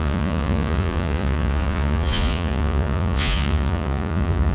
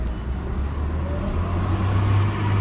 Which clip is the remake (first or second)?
first